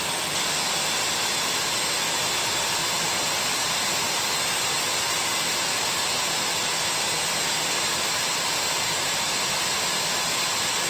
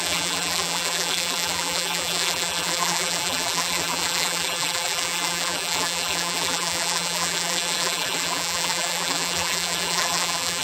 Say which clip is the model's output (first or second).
second